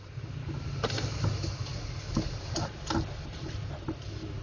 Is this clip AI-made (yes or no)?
no